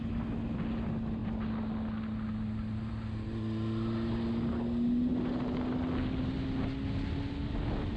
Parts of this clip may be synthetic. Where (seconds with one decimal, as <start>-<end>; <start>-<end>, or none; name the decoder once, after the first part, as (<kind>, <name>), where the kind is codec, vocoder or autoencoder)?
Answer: none